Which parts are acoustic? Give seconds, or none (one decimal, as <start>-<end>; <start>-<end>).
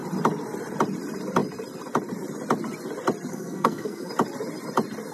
0.0-3.3; 4.1-5.1